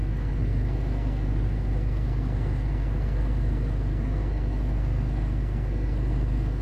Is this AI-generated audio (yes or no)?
yes